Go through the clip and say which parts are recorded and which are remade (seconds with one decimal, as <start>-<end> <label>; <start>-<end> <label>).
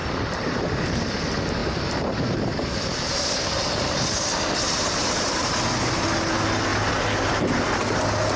0.0-1.0 remade; 1.0-1.6 recorded; 1.6-5.5 remade; 5.5-8.4 recorded